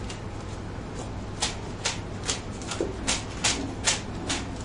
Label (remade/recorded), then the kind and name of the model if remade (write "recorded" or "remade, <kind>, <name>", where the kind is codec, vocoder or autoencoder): recorded